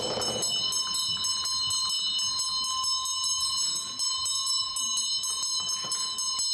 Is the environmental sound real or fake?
real